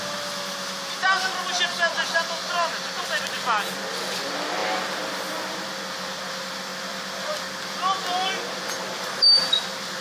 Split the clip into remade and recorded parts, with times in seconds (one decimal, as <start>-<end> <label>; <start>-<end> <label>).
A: 0.0-10.0 recorded